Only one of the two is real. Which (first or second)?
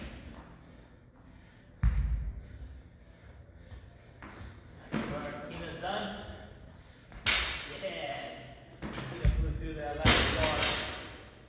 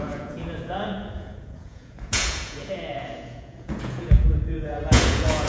first